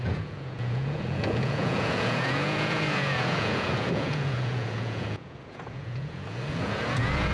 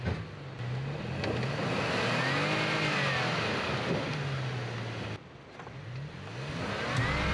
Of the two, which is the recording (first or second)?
second